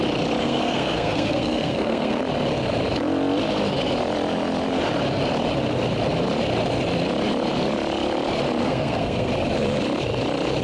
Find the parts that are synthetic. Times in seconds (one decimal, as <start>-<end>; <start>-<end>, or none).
0.4-2.2; 8.6-9.3

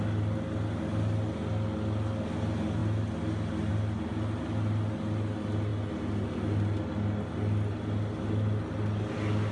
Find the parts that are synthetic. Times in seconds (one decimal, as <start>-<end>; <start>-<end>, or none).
none